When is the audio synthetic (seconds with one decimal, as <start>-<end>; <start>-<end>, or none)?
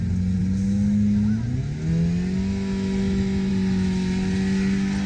none